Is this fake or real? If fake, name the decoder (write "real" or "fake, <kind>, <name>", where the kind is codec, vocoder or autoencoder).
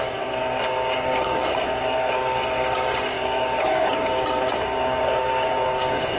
fake, codec, DAC